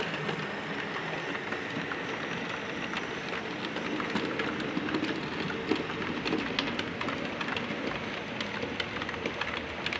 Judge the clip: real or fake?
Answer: real